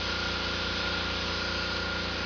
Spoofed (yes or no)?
no